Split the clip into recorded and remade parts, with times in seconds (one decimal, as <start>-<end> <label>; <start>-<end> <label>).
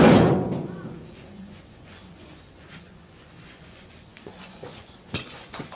0.0-5.8 remade